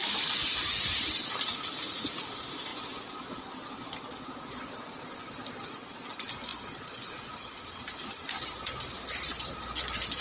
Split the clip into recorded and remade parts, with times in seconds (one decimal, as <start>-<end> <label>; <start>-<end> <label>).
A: 0.0-10.2 recorded